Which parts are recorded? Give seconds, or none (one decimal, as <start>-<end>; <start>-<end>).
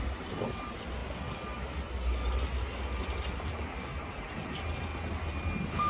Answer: 0.0-5.9